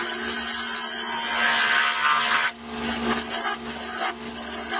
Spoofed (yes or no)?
no